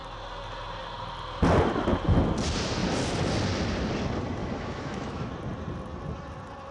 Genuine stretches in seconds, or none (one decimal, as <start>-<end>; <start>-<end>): 0.0-4.4; 5.3-6.7